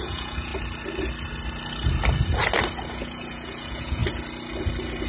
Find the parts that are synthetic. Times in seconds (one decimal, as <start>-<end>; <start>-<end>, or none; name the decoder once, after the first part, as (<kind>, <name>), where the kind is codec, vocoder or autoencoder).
0.0-0.5 (vocoder, Vocos); 2.9-4.0